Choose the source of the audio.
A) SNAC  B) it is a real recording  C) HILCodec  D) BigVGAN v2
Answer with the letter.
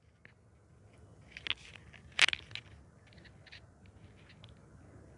B